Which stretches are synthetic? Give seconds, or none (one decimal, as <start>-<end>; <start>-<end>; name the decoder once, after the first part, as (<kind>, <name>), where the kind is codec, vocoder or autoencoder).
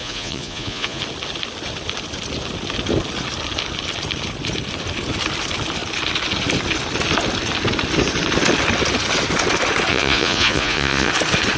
0.0-1.0 (vocoder, Vocos); 9.9-11.1